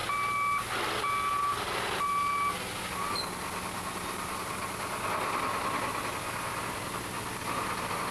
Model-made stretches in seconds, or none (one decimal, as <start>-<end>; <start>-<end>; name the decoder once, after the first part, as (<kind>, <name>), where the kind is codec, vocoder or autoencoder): none